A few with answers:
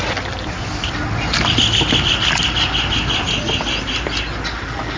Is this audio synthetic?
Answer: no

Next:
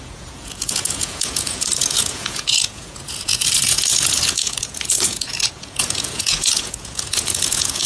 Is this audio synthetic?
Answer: yes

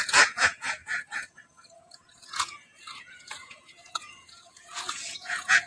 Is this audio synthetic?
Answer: yes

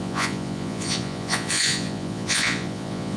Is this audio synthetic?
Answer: yes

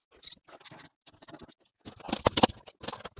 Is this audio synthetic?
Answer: no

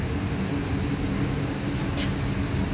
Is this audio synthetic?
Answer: no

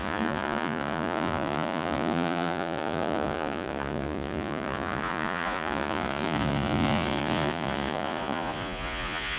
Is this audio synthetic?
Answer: yes